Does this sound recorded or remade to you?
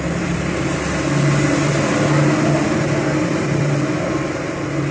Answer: recorded